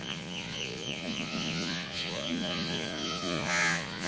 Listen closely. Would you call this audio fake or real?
fake